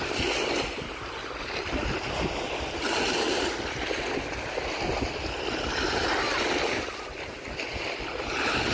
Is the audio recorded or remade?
recorded